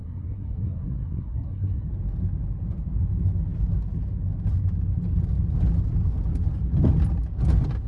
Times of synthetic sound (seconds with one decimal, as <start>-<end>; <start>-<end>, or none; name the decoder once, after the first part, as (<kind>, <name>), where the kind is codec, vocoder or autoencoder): 0.0-1.9 (codec, SNAC)